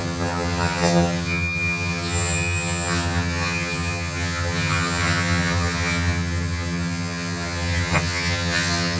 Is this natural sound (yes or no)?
no